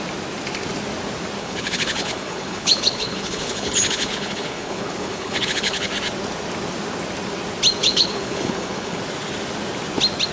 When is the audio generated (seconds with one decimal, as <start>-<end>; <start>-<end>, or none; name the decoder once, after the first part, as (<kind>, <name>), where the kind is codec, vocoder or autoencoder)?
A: 1.4-5.9 (codec, HILCodec); 7.8-9.0